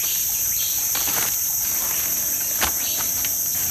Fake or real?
fake